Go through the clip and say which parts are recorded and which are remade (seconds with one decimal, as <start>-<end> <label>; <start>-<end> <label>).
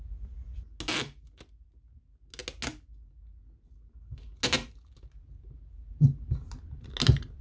0.0-7.4 recorded